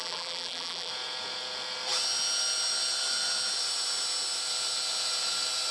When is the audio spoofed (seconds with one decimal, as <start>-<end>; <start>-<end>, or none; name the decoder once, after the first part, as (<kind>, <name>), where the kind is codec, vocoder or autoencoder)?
0.0-0.9 (vocoder, BigVGAN v2)